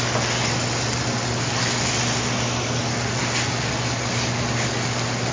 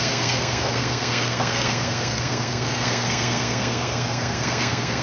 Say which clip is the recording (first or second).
first